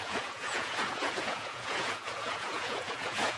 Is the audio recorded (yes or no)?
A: no